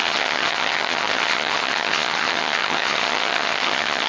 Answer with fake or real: fake